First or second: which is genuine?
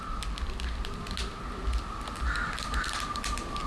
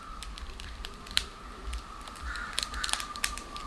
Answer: first